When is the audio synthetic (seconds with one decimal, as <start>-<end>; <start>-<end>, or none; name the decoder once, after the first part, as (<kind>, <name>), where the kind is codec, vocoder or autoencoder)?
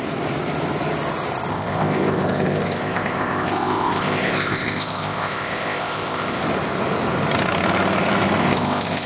1.5-6.4 (codec, ZipCodec); 8.4-9.1